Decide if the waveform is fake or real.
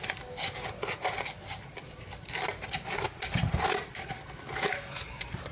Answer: real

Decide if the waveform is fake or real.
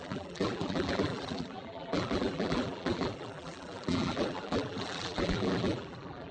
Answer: fake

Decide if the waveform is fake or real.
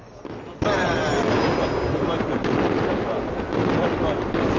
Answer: real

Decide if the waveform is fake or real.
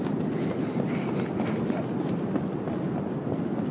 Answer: real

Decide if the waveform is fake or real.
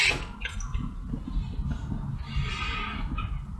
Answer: real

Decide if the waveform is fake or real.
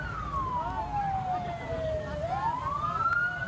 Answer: real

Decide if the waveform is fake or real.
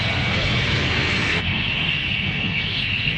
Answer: fake